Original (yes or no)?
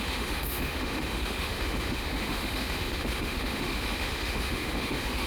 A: no